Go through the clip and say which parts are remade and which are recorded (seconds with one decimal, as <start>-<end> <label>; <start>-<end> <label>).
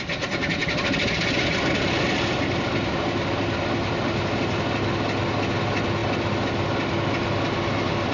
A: 0.0-8.1 recorded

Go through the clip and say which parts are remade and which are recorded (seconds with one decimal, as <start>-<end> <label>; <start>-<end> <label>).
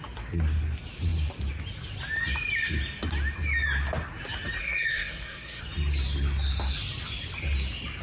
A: 0.0-4.6 recorded; 4.6-5.6 remade; 5.6-8.0 recorded